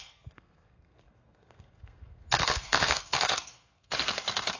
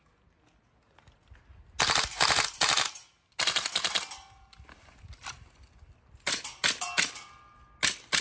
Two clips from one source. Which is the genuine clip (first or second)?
second